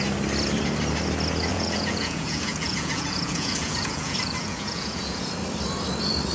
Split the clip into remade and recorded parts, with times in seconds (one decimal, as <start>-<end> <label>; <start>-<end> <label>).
0.0-1.5 recorded; 1.5-5.3 remade; 5.3-6.3 recorded